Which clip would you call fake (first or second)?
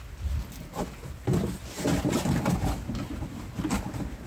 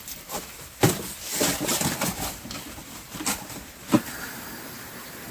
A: second